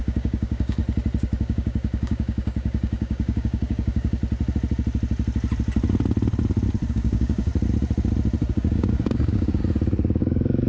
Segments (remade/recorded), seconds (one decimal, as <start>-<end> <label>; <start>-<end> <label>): 0.0-0.8 remade; 0.8-1.4 recorded; 1.4-4.2 remade; 4.2-6.9 recorded; 6.9-7.5 remade; 7.5-8.5 recorded; 8.5-9.6 remade; 9.6-10.2 recorded; 10.2-10.7 remade